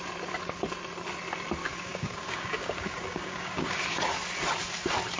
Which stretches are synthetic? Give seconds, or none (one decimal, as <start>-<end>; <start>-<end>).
1.6-3.8